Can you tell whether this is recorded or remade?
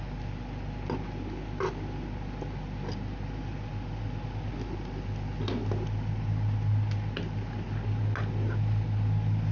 recorded